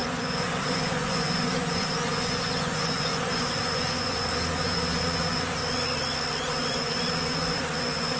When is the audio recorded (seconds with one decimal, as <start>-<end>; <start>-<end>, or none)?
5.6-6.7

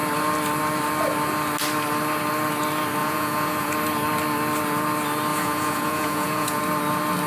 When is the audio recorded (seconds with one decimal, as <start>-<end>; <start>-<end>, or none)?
0.0-3.0; 3.7-5.3; 6.6-7.3

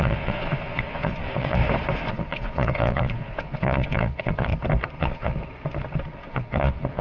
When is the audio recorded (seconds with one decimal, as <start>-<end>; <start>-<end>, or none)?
1.6-2.1; 4.5-5.0; 5.4-6.3